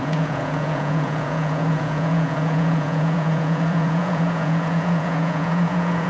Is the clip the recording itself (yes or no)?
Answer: no